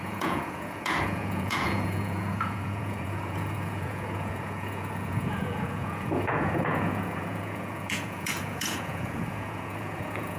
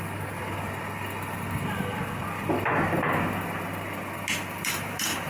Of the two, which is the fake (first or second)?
first